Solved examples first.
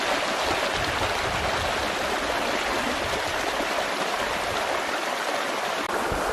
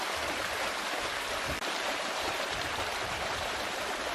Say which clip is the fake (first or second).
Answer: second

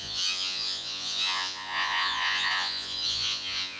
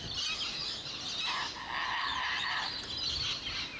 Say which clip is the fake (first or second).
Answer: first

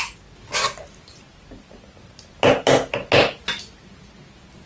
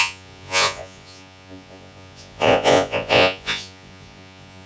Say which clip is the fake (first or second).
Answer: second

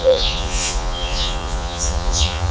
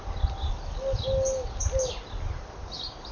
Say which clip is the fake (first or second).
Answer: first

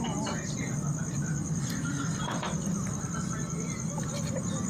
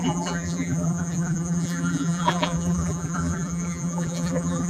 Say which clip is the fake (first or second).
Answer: second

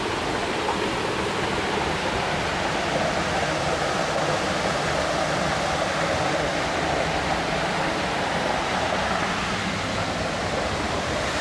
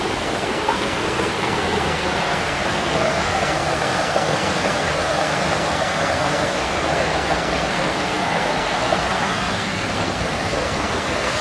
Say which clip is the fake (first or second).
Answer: second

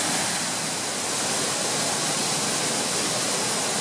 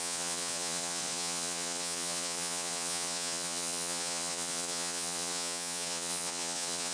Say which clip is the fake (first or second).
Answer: second